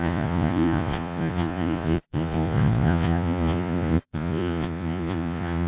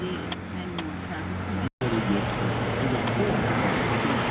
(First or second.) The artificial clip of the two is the first